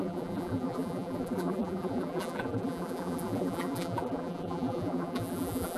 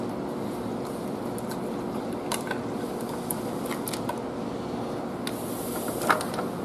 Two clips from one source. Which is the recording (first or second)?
second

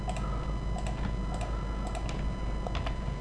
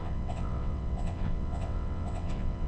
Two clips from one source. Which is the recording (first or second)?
first